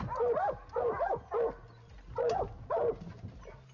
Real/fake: real